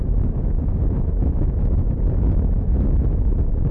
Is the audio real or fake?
fake